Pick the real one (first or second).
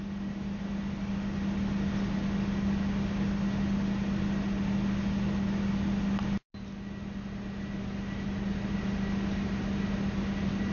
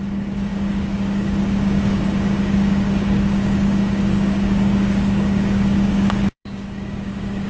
first